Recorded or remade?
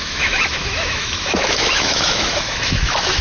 remade